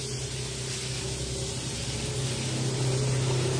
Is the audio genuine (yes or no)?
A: yes